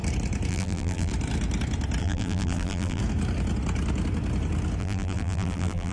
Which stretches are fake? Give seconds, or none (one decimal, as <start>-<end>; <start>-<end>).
0.5-1.1; 2.0-3.0; 4.8-5.9